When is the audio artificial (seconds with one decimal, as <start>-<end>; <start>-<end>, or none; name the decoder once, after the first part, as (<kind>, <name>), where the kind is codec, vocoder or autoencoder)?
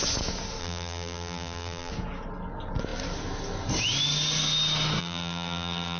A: 0.6-1.9 (vocoder, BigVGAN v2); 5.0-6.0